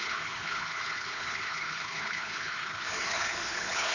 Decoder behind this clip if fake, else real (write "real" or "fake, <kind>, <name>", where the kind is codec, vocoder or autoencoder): fake, codec, HILCodec